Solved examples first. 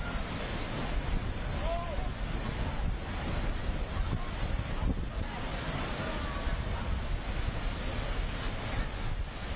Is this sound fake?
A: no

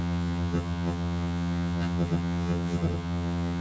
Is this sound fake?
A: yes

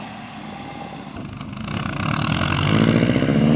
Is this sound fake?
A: no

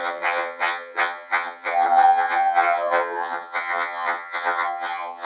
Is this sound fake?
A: yes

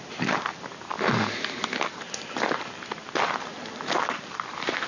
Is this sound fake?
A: no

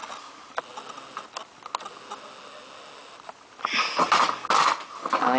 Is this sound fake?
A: no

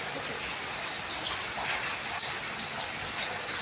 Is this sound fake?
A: no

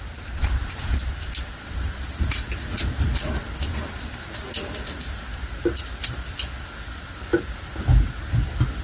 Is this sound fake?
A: no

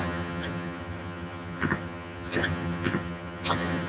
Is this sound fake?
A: yes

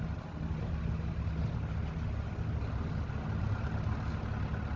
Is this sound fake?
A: no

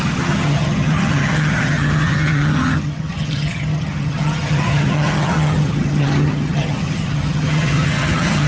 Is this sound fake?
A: yes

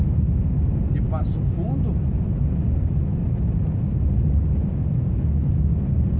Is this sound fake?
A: no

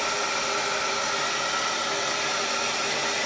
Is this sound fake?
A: no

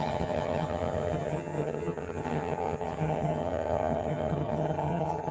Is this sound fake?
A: yes